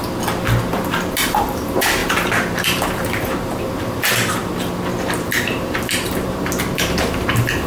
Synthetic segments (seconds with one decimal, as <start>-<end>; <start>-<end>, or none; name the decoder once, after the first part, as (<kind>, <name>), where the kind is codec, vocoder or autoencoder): 0.7-4.4 (vocoder, BigVGAN v2); 5.0-7.7